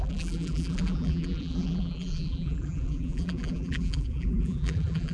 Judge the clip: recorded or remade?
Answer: remade